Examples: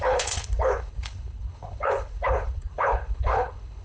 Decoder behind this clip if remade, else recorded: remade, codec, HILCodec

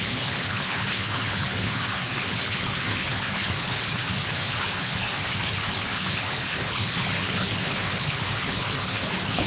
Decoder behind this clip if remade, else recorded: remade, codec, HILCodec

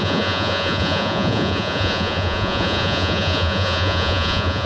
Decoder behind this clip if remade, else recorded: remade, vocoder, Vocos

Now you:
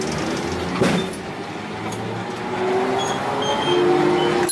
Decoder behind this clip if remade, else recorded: recorded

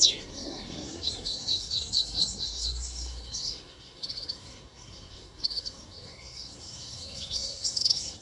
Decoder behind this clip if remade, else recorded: remade, codec, SNAC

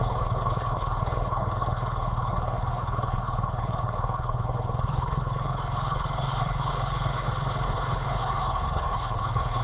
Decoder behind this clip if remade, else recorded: remade, codec, HILCodec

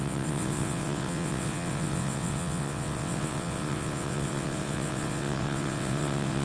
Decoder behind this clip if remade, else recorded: remade, vocoder, WaveNeXt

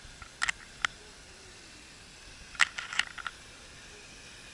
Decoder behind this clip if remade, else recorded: recorded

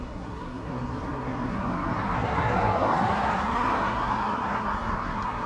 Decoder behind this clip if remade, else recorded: remade, codec, SNAC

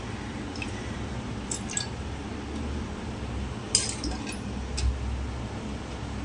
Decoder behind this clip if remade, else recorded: recorded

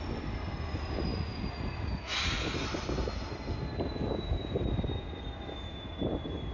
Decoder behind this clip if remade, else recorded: recorded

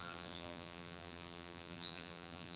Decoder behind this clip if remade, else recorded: remade, vocoder, BigVGAN v2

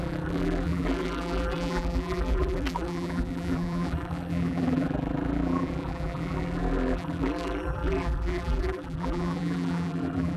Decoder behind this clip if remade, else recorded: remade, vocoder, BigVGAN v2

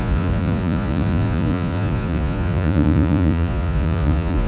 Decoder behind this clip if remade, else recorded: remade, vocoder, Vocos